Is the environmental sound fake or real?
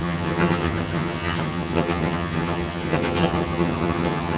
fake